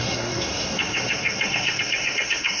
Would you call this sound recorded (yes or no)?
no